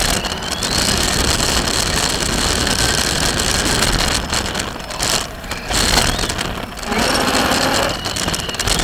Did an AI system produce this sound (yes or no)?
no